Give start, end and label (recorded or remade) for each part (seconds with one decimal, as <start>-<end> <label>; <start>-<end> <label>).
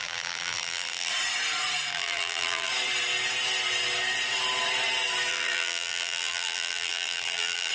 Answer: 0.0-1.1 remade; 1.1-1.9 recorded; 1.9-2.7 remade; 2.7-5.3 recorded; 5.3-7.7 remade